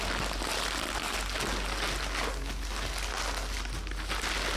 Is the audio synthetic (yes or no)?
no